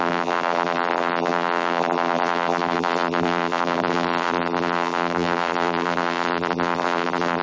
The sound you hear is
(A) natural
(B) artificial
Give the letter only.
B